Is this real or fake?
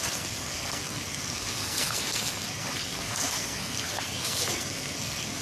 fake